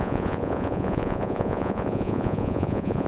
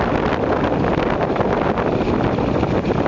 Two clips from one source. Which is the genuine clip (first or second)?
second